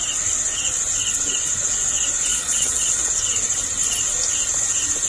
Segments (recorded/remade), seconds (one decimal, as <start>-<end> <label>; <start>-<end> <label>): 0.0-2.3 recorded; 2.3-3.1 remade; 3.1-5.1 recorded